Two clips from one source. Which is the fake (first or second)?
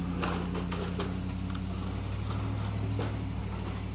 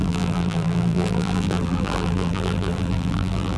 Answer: second